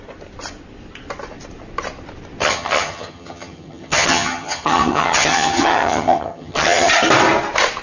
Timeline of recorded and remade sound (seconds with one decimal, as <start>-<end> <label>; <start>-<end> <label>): 0.0-2.4 recorded; 2.4-6.9 remade; 6.9-7.8 recorded